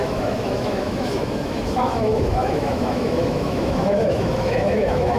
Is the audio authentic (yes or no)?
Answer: no